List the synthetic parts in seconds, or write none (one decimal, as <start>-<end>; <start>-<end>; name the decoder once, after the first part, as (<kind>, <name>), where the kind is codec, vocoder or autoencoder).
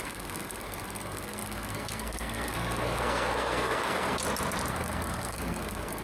0.0-4.2 (codec, SNAC); 4.7-6.0